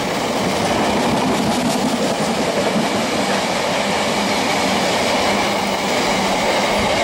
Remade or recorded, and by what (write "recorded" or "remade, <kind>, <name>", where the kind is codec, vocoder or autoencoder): recorded